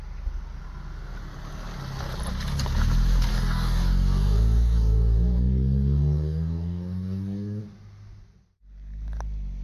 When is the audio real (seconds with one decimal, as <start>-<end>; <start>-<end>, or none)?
0.0-3.3; 7.6-9.6